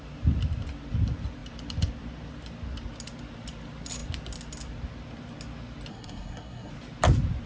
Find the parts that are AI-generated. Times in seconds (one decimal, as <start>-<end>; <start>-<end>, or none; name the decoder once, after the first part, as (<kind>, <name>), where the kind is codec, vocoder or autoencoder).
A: 5.9-6.7 (codec, SNAC)